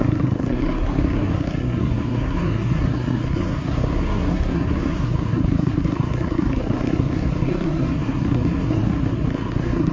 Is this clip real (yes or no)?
no